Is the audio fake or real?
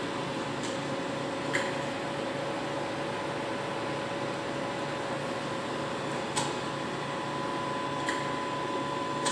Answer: real